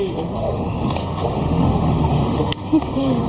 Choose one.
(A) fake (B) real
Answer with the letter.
A